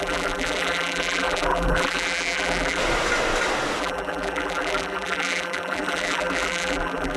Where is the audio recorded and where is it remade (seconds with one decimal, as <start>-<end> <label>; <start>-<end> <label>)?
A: 0.0-2.8 remade; 2.8-3.8 recorded; 3.8-7.2 remade